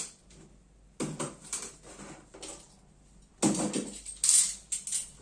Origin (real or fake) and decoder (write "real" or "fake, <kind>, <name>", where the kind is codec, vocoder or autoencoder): real